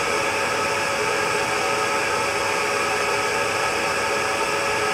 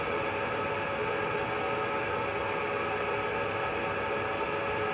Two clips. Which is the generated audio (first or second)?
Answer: first